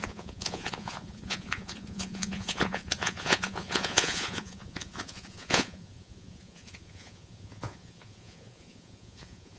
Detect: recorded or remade remade